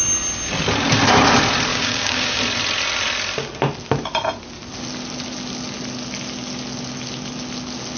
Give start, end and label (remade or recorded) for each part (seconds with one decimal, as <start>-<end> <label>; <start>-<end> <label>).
0.0-1.7 recorded; 1.7-2.4 remade; 2.4-8.0 recorded